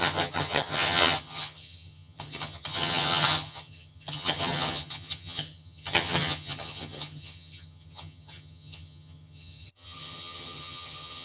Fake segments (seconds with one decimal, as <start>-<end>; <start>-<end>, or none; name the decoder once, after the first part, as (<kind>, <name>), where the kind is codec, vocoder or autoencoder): 0.0-11.2 (vocoder, HiFi-GAN)